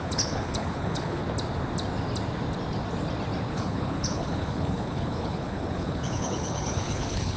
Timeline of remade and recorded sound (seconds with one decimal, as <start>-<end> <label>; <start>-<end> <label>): 0.0-1.2 remade; 1.2-3.5 recorded; 3.5-7.4 remade